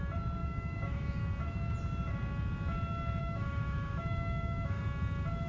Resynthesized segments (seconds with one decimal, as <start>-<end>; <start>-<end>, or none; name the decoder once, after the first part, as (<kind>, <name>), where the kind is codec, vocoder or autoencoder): 0.4-1.2 (autoencoder, DAC-VAE); 3.2-4.8